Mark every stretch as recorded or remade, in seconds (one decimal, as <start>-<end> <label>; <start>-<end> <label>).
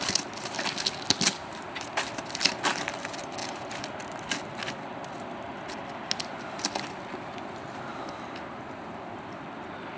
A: 0.0-10.0 recorded